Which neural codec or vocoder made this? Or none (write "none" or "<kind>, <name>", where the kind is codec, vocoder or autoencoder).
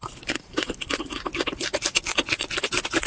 none